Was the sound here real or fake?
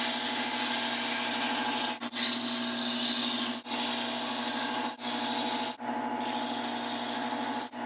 real